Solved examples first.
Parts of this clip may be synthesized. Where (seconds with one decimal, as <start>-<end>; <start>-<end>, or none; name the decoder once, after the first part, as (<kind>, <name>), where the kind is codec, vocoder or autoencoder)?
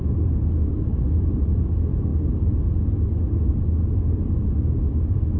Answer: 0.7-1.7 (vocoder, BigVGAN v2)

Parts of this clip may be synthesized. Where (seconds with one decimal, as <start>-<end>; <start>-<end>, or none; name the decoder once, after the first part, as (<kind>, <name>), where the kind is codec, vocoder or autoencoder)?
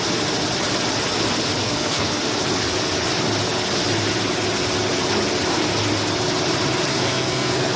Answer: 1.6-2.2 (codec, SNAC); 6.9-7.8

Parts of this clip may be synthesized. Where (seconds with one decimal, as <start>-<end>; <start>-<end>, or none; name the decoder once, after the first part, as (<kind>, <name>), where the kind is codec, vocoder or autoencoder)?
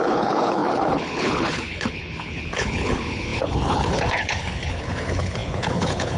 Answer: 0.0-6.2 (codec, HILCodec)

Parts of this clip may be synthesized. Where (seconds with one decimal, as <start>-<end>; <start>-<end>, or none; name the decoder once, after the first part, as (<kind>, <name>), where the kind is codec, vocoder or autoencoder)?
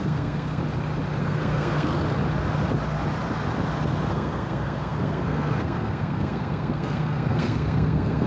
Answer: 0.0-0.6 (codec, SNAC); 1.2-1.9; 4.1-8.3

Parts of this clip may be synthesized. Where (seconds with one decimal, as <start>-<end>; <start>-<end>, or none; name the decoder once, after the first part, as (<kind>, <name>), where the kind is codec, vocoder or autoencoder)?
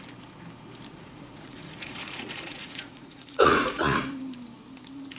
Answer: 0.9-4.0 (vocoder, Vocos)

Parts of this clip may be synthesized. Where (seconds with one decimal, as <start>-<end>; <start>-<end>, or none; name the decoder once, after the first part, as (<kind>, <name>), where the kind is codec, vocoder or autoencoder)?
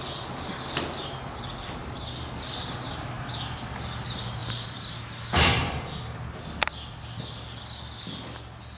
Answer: none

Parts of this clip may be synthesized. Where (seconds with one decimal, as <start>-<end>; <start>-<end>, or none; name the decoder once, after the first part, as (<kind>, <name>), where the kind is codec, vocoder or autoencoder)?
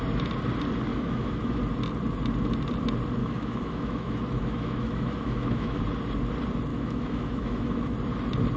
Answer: 0.9-1.6 (autoencoder, DAC-VAE); 3.2-5.8; 6.7-7.9